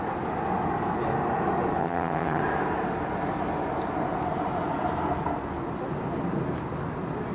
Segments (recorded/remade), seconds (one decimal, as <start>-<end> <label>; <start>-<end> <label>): 0.0-1.8 recorded; 1.8-2.4 remade; 2.4-7.3 recorded